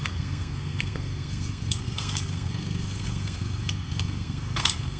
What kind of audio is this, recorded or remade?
remade